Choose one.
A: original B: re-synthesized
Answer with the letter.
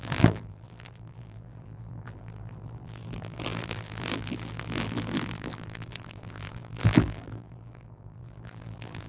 B